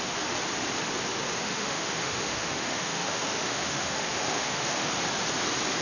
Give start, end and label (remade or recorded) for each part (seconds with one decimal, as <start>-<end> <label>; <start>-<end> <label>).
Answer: 0.0-1.4 recorded; 1.4-4.9 remade; 4.9-5.8 recorded